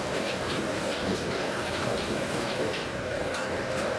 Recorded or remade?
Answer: remade